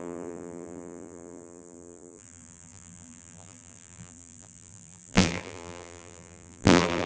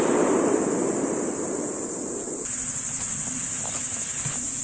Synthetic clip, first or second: first